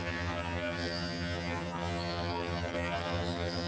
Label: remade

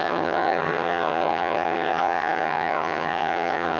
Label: remade